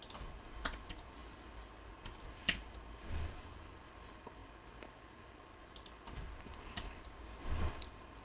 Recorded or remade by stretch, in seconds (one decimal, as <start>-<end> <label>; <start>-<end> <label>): 0.0-8.2 recorded